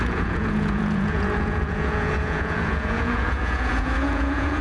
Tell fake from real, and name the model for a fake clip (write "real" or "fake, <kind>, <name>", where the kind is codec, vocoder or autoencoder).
fake, vocoder, Vocos